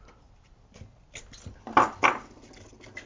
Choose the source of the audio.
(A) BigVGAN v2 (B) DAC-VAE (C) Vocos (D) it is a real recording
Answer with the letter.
D